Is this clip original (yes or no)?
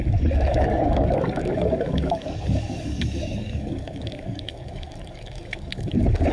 no